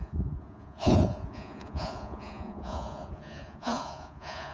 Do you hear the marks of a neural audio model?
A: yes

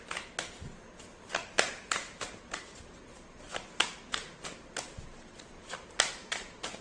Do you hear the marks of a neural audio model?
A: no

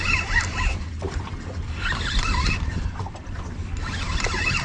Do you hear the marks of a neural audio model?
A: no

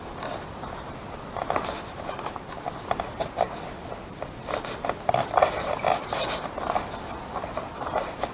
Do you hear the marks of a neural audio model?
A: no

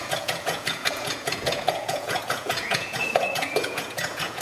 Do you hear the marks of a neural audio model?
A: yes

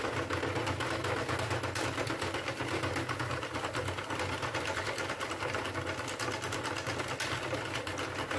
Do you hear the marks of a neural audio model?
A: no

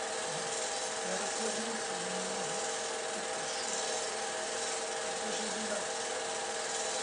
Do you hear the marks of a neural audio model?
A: no